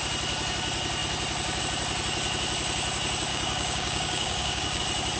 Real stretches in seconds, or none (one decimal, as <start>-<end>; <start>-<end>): 0.0-3.3; 4.8-5.2